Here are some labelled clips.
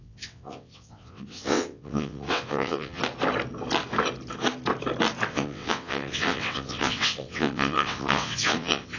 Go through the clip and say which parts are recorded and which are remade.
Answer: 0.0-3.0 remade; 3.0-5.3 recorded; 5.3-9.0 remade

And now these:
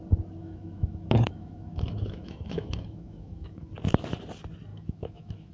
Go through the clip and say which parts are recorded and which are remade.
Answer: 0.0-0.4 recorded; 0.4-3.7 remade; 3.7-4.7 recorded; 4.7-5.5 remade

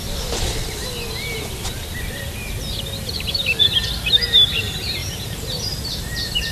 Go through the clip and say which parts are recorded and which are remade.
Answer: 0.0-3.3 recorded; 3.3-6.5 remade

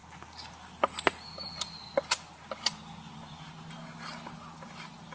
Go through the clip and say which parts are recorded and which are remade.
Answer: 0.0-5.1 recorded

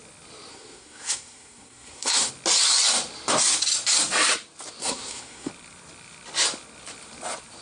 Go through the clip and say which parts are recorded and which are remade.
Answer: 0.0-0.5 recorded; 0.5-2.3 remade; 2.3-4.8 recorded; 4.8-5.5 remade; 5.5-7.6 recorded

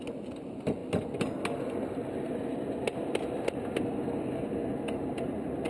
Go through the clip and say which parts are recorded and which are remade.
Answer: 0.0-5.7 recorded

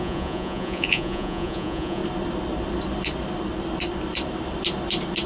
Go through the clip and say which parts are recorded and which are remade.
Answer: 0.0-2.0 remade; 2.0-5.3 recorded